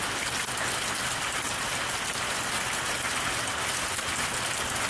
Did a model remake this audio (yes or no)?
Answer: no